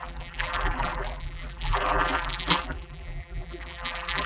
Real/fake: fake